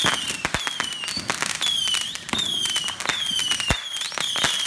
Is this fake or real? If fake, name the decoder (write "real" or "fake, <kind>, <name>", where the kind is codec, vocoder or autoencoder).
real